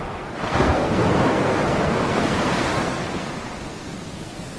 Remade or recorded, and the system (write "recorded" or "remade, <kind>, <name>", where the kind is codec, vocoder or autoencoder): remade, codec, SNAC